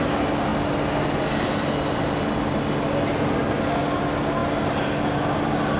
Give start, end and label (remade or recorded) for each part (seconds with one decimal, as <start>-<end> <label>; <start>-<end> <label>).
0.0-5.8 recorded